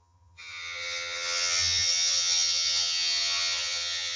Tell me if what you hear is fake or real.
fake